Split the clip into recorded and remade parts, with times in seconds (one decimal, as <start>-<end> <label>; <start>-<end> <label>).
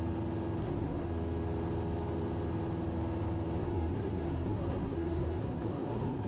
0.0-0.6 recorded; 0.6-1.1 remade; 1.1-3.6 recorded; 3.6-6.3 remade